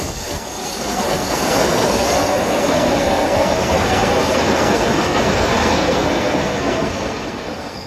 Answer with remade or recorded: remade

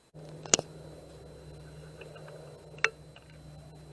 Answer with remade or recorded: recorded